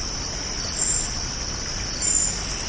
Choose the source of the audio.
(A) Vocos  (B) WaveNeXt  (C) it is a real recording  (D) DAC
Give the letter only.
C